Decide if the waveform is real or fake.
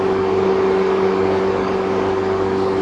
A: fake